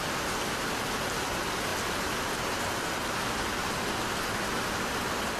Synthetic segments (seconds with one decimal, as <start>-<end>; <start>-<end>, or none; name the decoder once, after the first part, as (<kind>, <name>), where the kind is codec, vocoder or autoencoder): none

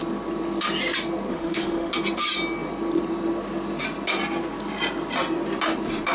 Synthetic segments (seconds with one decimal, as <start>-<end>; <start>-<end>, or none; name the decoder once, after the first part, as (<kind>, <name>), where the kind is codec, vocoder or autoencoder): 1.3-1.9 (autoencoder, DAC-VAE)

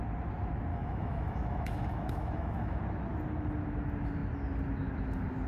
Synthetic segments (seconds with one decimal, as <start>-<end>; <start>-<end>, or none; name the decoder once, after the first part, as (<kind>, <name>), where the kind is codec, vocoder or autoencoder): 0.7-2.8 (autoencoder, DAC-VAE)

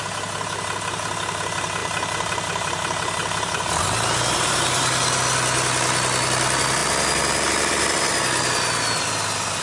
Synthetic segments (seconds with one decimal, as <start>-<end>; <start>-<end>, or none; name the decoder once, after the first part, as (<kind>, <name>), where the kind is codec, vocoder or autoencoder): 1.8-5.2 (vocoder, BigVGAN v2)

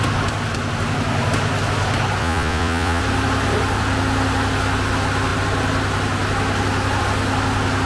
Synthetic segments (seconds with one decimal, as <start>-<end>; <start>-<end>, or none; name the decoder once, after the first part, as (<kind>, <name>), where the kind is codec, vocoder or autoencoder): 2.2-3.0 (vocoder, Vocos)

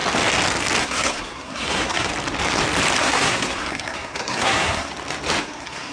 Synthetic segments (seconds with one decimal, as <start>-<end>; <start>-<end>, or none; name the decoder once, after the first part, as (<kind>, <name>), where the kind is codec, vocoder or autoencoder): 0.8-2.1 (codec, SNAC); 3.0-4.9; 5.4-5.9